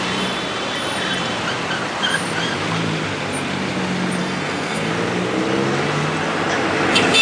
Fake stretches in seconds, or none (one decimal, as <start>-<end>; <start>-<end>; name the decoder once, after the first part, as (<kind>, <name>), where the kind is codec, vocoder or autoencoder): 4.2-4.9 (codec, SNAC)